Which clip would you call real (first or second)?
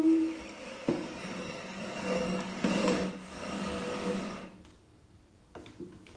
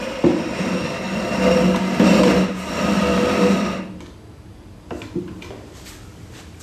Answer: second